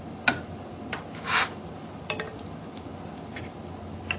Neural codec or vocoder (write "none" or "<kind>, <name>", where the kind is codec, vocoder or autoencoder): none